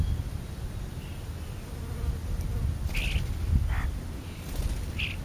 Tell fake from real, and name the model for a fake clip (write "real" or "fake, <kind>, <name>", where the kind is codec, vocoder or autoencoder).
real